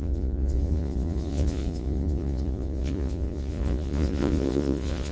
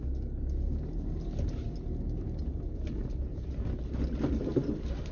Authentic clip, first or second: second